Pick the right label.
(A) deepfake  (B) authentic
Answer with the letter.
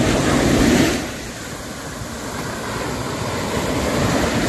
B